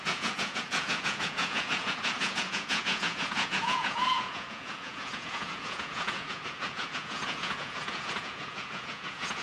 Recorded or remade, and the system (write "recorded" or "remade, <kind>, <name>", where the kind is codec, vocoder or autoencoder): remade, vocoder, Vocos